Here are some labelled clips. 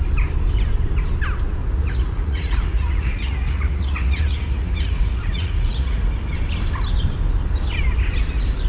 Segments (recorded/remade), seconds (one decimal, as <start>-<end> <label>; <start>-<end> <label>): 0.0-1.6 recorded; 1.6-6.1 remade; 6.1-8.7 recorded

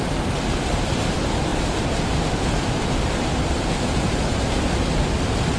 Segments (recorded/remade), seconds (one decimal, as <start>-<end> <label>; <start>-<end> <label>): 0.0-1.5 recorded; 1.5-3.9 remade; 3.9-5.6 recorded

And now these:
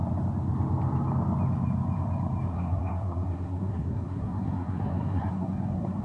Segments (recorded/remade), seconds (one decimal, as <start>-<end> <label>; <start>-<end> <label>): 0.0-2.5 recorded; 2.5-6.0 remade

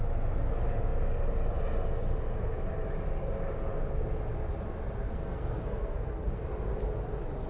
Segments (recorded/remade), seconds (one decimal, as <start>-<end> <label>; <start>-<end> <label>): 0.0-5.1 recorded; 5.1-6.4 remade; 6.4-7.5 recorded